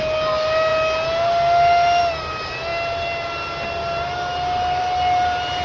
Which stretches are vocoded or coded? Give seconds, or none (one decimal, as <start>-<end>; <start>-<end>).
none